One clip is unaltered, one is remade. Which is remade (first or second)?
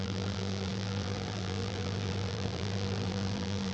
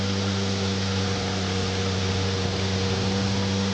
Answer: first